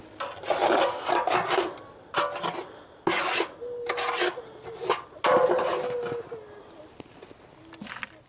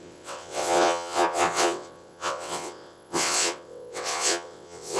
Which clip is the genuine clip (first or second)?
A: first